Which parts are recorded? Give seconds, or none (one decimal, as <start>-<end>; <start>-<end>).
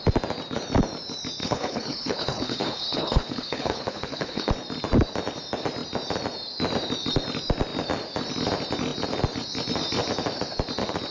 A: 0.0-1.4; 4.5-11.1